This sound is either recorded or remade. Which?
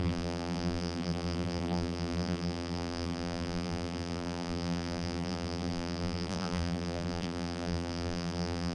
remade